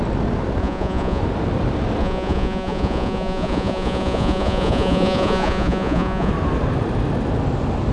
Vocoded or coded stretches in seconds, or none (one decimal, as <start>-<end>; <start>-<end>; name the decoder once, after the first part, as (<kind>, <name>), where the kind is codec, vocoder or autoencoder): 0.6-1.2 (vocoder, Vocos); 2.0-6.3